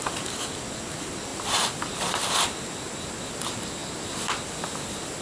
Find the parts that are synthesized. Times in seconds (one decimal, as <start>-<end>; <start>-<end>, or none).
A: none